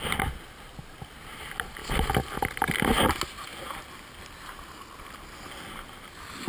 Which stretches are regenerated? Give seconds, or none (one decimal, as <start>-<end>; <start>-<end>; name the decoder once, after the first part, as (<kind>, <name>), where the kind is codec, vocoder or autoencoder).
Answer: none